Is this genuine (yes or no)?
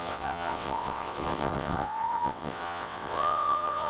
no